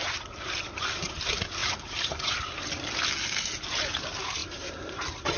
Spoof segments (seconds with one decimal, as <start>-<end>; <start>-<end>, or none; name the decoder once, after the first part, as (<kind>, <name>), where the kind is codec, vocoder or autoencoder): 1.6-2.3 (vocoder, BigVGAN v2); 4.4-5.4

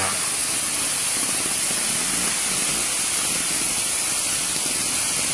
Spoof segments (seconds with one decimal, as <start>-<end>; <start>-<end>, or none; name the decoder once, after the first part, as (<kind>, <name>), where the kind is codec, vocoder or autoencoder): none